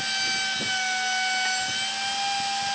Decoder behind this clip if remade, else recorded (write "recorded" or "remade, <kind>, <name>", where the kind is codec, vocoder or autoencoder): recorded